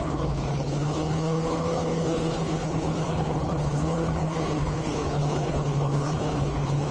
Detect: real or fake fake